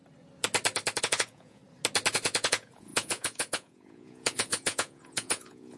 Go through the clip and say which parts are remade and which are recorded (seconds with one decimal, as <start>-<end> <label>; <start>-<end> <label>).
0.0-1.0 recorded; 1.0-1.6 remade; 1.6-2.1 recorded; 2.1-5.8 remade